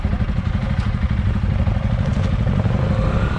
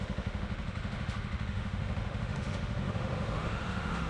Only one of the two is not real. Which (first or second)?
second